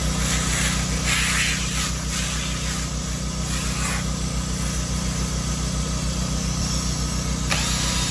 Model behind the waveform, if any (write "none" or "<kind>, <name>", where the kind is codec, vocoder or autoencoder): none